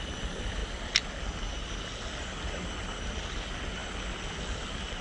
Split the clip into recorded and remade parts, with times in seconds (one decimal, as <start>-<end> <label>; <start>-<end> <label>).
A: 0.0-5.0 recorded